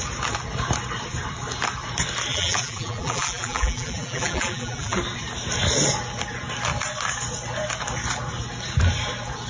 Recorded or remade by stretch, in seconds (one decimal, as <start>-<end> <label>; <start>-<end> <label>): 0.0-2.3 recorded; 2.3-5.0 remade; 5.0-9.5 recorded

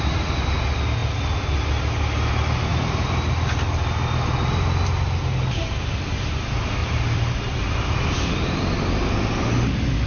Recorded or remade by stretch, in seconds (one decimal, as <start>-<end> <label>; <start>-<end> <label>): 0.0-2.7 recorded; 2.7-3.3 remade; 3.3-6.8 recorded; 6.8-8.9 remade; 8.9-10.1 recorded

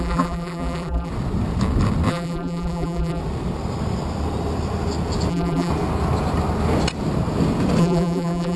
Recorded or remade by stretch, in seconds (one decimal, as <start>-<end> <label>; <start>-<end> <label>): 0.0-1.1 remade; 1.1-2.1 recorded; 2.1-3.2 remade; 3.2-5.3 recorded; 5.3-5.7 remade; 5.7-7.8 recorded; 7.8-8.6 remade

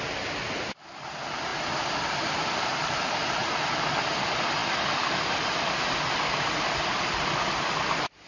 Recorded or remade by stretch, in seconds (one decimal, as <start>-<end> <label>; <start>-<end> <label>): 0.0-8.3 recorded